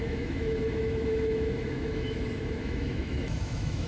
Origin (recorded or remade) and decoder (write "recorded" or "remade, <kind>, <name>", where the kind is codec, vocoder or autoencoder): remade, autoencoder, DAC-VAE